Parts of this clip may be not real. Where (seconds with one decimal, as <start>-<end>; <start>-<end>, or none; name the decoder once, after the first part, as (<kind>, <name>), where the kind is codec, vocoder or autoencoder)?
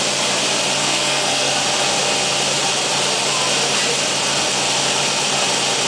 0.8-1.5 (codec, SNAC)